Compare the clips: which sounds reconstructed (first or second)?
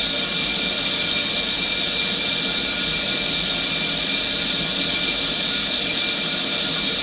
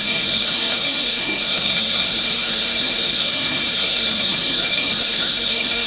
second